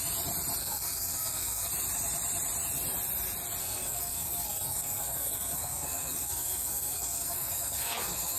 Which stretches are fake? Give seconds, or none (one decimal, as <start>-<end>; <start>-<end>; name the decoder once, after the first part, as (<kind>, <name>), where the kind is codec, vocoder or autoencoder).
0.6-1.7 (codec, SNAC); 3.6-8.4